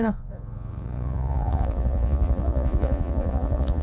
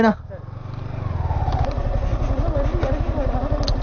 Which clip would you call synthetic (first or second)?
first